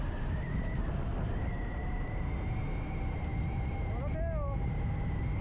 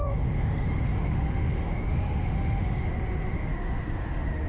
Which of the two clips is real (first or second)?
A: first